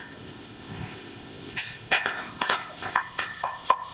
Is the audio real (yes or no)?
no